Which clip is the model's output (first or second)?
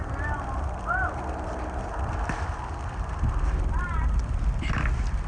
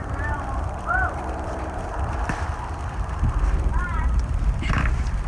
second